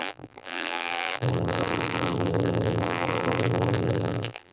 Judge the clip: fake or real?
fake